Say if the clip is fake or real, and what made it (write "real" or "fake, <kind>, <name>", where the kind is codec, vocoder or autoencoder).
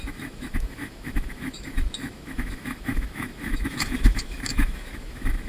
fake, autoencoder, DAC-VAE